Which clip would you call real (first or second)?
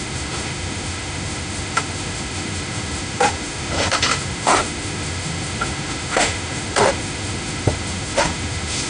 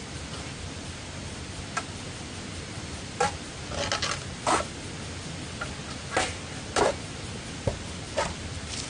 second